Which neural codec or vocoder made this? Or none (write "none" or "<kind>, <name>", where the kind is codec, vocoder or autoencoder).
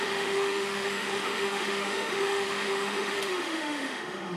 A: autoencoder, DAC-VAE